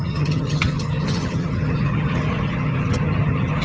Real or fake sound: fake